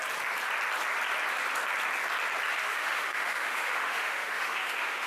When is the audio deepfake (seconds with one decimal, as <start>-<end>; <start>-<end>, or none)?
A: 2.6-5.1